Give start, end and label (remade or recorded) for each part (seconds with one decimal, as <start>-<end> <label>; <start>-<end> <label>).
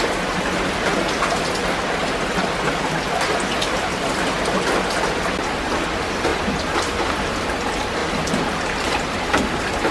0.0-9.9 recorded